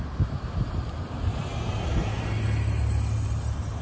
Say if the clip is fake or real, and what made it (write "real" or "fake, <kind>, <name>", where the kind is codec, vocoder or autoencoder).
real